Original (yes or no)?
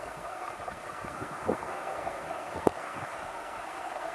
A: no